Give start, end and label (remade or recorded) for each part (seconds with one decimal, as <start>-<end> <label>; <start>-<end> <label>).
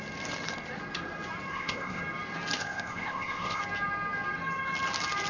0.0-1.5 recorded; 1.5-2.0 remade; 2.0-2.6 recorded; 2.6-3.6 remade; 3.6-5.3 recorded